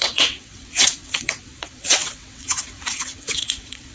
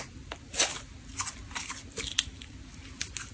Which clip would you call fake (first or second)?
first